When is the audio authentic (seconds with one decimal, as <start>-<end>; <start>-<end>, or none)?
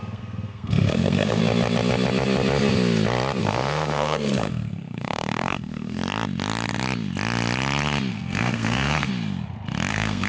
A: 1.4-3.4; 6.0-8.1; 9.1-9.9